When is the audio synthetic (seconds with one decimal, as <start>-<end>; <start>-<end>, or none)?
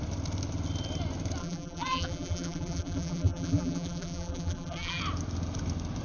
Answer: 1.4-5.0